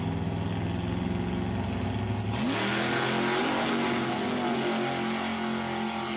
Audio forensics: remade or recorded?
recorded